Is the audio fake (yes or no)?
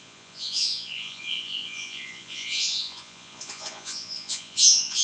yes